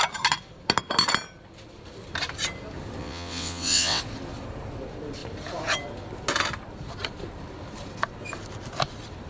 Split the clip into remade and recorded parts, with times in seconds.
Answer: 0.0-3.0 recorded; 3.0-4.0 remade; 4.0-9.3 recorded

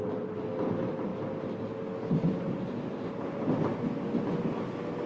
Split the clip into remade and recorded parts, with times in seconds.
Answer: 0.0-5.1 recorded

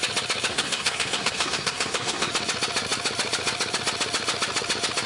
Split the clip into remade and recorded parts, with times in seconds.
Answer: 0.0-0.5 recorded; 0.5-2.3 remade; 2.3-5.1 recorded

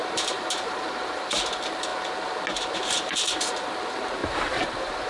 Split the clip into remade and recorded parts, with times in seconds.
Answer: 0.0-1.9 remade; 1.9-2.7 recorded; 2.7-5.1 remade

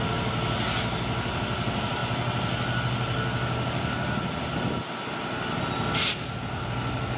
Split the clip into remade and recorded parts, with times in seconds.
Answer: 0.0-7.2 recorded

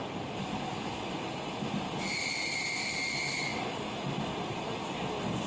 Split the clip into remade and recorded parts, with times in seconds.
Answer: 0.0-5.5 recorded

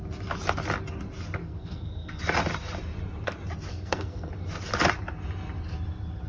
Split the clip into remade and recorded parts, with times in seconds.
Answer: 0.0-1.4 recorded; 1.4-2.2 remade; 2.2-3.7 recorded; 3.7-4.3 remade; 4.3-6.3 recorded

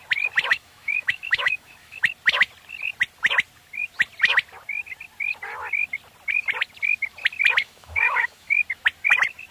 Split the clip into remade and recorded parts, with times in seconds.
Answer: 0.0-0.5 recorded; 0.5-2.0 remade; 2.0-7.6 recorded; 7.6-8.6 remade; 8.6-9.5 recorded